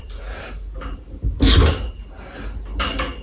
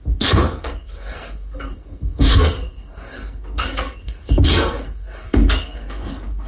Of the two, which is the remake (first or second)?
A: second